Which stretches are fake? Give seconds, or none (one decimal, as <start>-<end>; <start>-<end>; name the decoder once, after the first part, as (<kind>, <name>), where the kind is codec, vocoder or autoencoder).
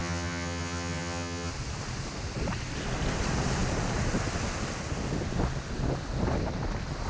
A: 0.0-1.5 (vocoder, HiFi-GAN)